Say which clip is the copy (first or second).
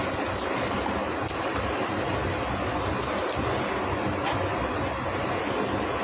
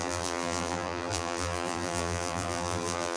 second